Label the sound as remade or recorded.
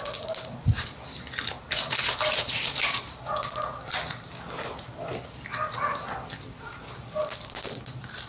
recorded